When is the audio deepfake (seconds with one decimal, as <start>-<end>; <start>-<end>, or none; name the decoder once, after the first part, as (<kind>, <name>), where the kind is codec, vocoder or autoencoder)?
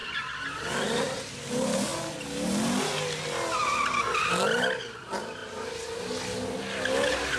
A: none